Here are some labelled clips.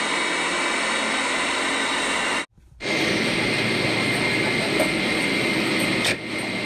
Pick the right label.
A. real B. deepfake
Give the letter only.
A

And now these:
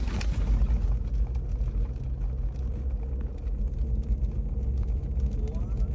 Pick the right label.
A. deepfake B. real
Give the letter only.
B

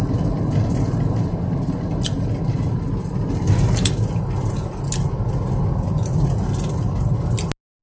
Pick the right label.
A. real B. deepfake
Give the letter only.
A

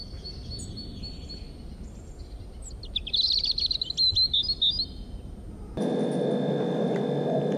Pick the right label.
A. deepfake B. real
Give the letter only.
B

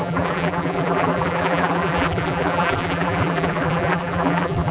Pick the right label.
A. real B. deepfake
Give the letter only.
B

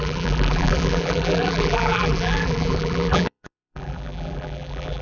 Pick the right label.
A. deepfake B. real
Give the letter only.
A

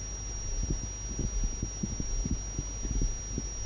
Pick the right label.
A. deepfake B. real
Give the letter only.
B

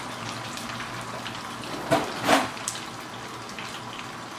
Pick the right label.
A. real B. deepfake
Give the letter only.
A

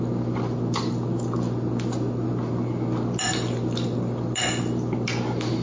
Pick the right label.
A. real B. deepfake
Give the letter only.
A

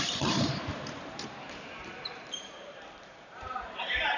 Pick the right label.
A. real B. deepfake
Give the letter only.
B